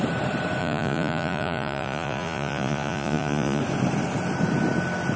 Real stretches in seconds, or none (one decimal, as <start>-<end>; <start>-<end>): 0.0-0.6; 3.6-5.2